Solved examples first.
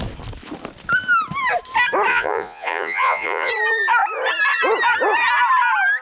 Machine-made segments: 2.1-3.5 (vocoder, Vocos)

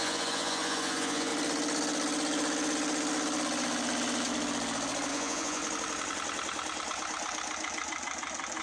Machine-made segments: 0.0-1.3 (vocoder, Vocos); 5.1-5.6

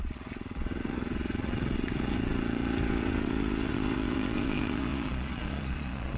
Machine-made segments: 0.0-6.2 (vocoder, Vocos)

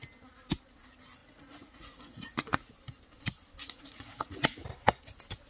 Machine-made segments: 1.2-2.7 (vocoder, Vocos); 3.6-4.6

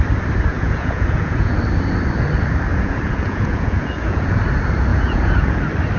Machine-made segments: 0.5-1.5 (vocoder, Vocos); 2.7-4.3; 4.9-5.6

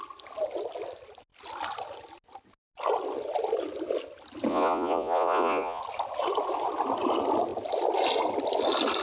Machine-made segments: 4.5-5.8 (vocoder, Vocos)

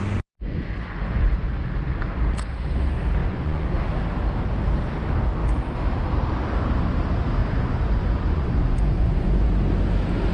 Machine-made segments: 0.0-1.3 (vocoder, Vocos); 3.2-3.8; 7.4-9.6

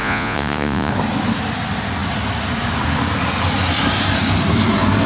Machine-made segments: 0.0-0.9 (vocoder, Vocos)